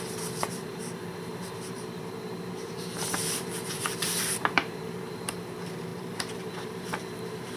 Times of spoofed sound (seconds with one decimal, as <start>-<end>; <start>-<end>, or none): 0.0-7.6